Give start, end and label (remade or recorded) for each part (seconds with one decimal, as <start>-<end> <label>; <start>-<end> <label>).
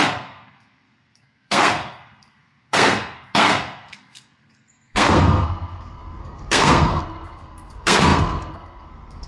0.0-9.3 remade